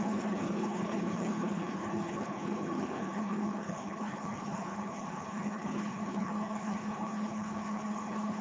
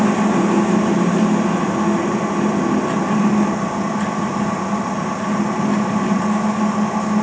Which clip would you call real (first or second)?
second